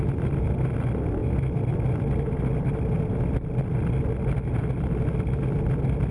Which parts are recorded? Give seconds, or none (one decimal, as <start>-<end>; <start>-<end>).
0.0-6.1